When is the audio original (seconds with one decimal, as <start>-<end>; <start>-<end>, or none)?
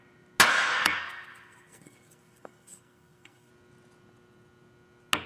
0.0-0.5; 3.5-5.3